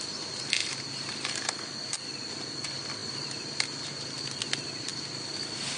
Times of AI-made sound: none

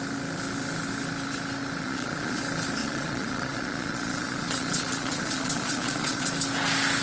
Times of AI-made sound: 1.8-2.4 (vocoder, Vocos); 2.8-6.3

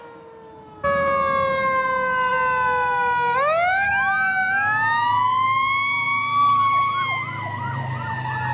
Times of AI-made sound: none